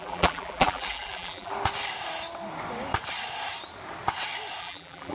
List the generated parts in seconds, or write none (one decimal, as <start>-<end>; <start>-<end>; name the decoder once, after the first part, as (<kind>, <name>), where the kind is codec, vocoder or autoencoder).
0.0-1.5 (vocoder, BigVGAN v2); 4.6-5.1